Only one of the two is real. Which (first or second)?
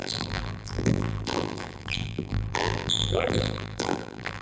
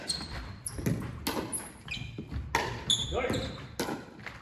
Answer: second